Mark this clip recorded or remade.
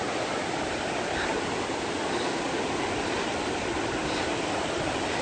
recorded